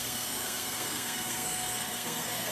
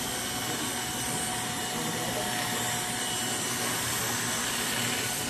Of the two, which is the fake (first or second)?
first